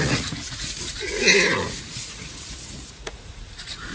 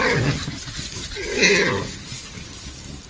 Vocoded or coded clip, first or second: first